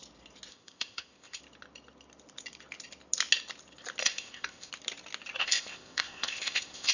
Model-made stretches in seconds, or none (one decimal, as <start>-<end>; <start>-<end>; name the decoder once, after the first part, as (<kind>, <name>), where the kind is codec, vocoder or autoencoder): 0.5-1.4 (codec, ZipCodec); 4.0-4.7; 5.4-6.9